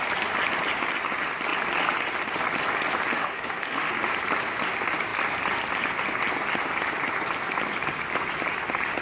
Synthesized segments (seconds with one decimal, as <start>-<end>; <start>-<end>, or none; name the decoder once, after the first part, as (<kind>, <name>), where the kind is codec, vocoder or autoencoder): 3.1-3.9 (autoencoder, DAC-VAE)